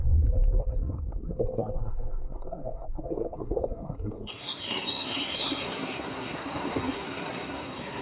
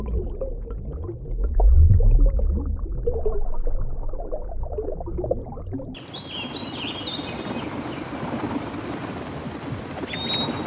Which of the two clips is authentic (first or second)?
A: second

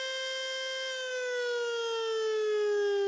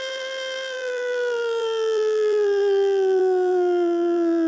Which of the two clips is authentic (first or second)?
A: first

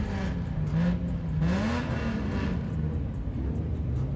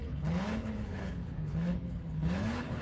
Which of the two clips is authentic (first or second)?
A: first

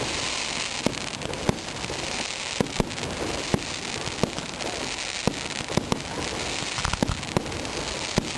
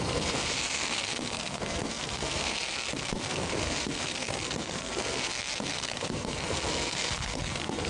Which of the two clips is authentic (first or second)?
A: first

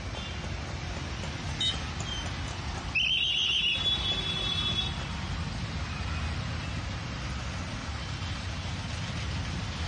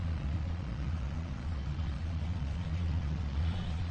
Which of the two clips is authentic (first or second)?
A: first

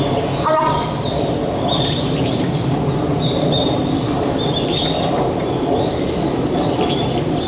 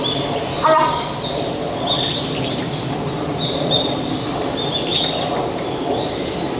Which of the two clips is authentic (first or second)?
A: second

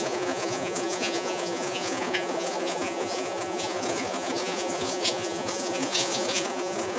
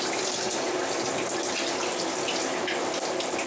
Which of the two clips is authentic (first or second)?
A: second